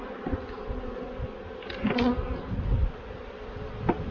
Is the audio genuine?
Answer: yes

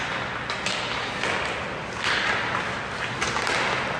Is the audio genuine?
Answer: yes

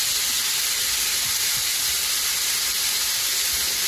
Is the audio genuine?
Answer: yes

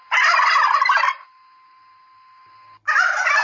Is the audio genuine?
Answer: yes